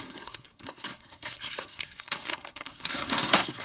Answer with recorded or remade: remade